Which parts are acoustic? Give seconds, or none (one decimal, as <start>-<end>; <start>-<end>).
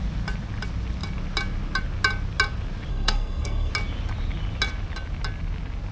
0.0-2.9; 3.7-5.9